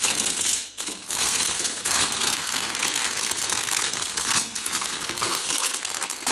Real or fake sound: fake